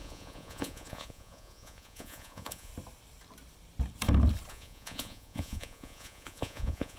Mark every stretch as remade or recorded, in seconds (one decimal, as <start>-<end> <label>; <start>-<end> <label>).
0.0-2.7 remade; 2.7-4.5 recorded; 4.5-7.0 remade